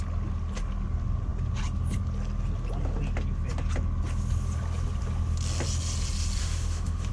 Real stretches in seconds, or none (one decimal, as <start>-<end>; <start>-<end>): 0.0-6.4